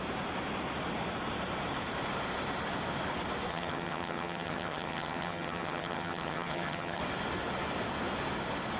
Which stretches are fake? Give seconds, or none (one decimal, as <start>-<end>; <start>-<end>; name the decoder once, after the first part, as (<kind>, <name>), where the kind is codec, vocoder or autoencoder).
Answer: 3.5-7.0 (vocoder, HiFi-GAN)